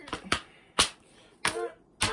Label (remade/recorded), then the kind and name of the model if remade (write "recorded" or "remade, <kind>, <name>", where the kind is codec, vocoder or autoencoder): recorded